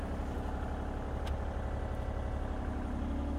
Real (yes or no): yes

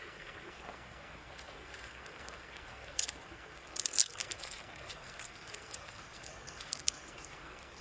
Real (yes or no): no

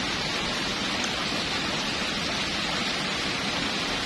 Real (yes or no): yes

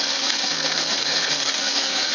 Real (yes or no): no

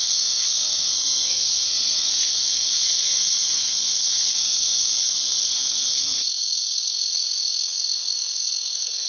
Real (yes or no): no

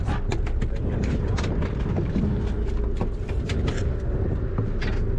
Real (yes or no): yes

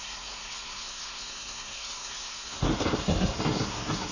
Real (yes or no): no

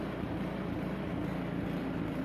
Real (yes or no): yes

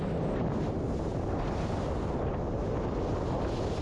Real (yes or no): yes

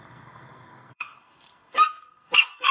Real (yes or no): no